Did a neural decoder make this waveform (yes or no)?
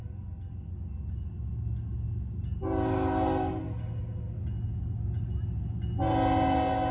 no